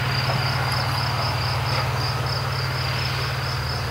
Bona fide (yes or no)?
yes